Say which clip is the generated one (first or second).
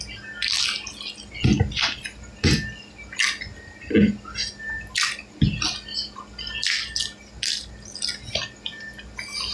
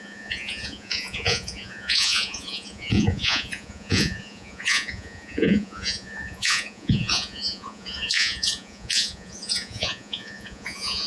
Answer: second